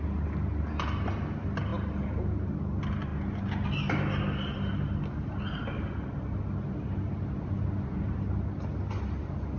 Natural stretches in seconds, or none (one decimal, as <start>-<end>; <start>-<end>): 0.0-9.6